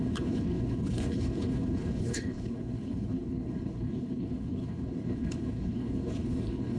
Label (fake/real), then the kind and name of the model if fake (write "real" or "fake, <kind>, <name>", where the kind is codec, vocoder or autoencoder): fake, codec, HILCodec